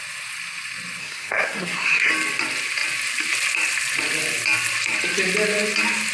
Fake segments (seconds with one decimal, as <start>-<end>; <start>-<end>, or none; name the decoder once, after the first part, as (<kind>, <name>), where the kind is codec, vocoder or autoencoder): 1.0-2.1 (codec, SNAC)